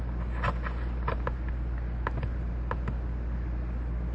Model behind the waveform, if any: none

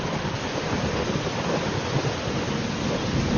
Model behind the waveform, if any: none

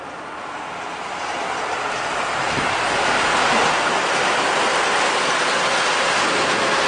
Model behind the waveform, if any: none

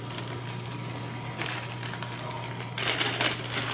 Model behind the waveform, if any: none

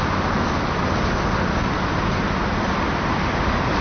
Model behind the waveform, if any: none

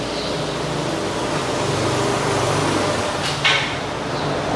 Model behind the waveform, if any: none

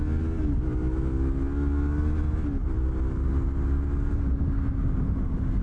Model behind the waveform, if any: none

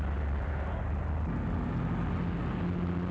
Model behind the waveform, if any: none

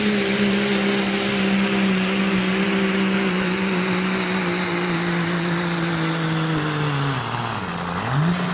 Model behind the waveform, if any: none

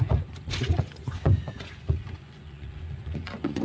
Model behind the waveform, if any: vocoder, Vocos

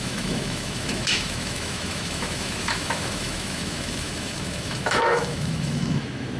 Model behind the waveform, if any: autoencoder, DAC-VAE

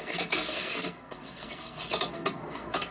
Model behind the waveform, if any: codec, SNAC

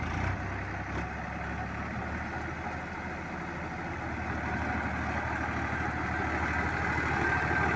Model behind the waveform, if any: none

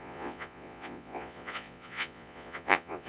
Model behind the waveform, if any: vocoder, Vocos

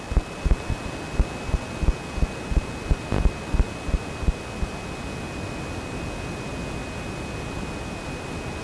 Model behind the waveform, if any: none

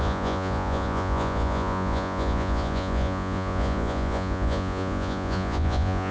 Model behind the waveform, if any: vocoder, Vocos